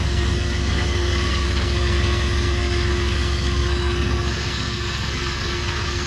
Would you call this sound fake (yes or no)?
yes